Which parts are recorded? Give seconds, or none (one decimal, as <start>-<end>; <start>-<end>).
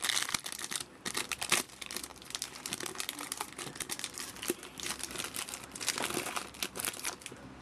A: 0.0-7.6